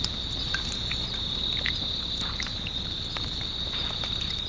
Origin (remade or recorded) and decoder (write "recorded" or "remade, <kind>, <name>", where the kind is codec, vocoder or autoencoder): recorded